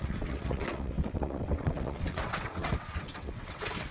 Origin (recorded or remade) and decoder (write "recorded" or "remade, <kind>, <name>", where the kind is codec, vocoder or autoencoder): remade, vocoder, WaveNeXt